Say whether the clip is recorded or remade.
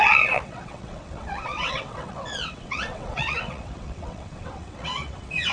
remade